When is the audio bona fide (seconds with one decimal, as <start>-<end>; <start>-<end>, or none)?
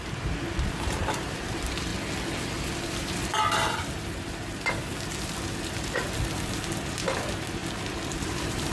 1.9-2.9; 3.3-5.5; 7.6-8.1